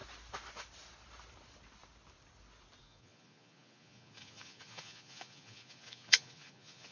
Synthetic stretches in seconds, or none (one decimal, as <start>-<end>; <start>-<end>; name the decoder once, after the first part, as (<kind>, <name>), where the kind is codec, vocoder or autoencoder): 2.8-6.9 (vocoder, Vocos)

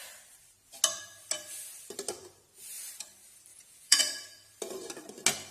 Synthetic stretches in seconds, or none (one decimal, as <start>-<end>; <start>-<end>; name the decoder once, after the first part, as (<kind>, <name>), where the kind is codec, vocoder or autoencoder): 3.5-4.0 (vocoder, Vocos)

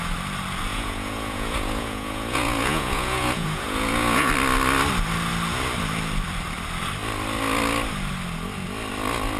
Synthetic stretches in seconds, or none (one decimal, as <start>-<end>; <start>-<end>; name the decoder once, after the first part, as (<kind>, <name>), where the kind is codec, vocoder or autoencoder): 0.7-4.3 (vocoder, Vocos)

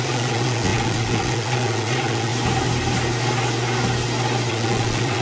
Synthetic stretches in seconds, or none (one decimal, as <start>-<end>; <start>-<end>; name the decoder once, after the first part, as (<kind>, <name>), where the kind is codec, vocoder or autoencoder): 0.0-2.3 (vocoder, Vocos); 4.5-5.2

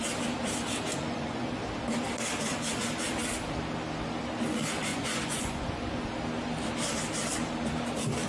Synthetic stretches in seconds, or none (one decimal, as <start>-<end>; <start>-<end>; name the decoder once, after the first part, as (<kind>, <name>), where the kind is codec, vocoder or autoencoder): 0.9-1.6 (vocoder, Vocos); 4.9-6.1